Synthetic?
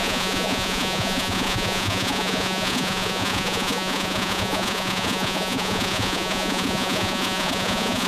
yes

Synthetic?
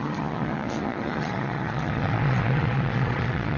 yes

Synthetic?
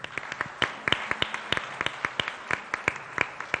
no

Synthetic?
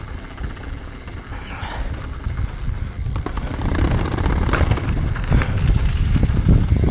no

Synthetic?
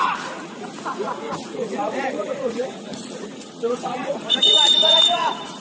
yes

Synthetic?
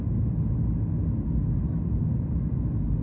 no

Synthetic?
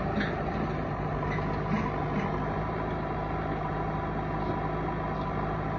no